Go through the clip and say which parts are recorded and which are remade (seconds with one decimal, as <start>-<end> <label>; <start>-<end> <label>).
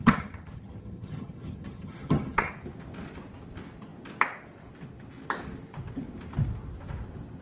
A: 0.0-2.5 remade; 2.5-7.4 recorded